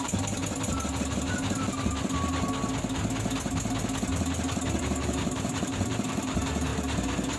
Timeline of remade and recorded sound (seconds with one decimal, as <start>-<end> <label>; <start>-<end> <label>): 0.0-0.4 remade; 0.4-4.8 recorded; 4.8-6.7 remade; 6.7-7.4 recorded